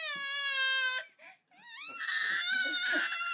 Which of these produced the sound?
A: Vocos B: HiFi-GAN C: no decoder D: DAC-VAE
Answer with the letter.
C